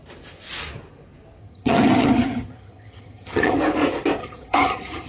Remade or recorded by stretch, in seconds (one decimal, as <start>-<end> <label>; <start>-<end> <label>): 0.0-1.4 recorded; 1.4-3.6 remade; 3.6-4.2 recorded; 4.2-5.1 remade